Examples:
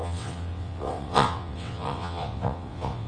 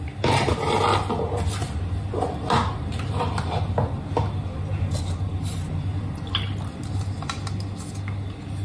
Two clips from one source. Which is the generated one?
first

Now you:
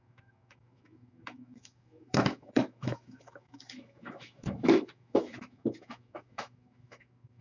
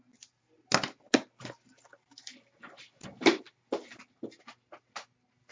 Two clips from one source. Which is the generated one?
first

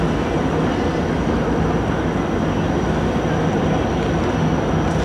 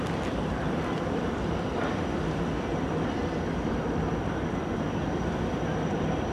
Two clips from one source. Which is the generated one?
second